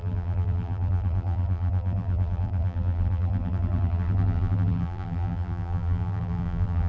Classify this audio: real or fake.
fake